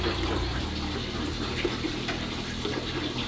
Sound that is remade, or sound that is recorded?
recorded